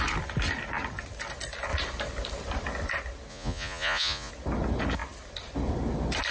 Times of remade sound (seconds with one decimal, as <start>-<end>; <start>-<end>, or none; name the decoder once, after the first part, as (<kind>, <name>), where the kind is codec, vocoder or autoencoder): 3.3-4.3 (vocoder, Vocos)